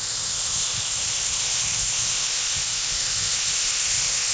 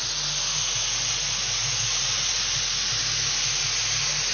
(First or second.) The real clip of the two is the second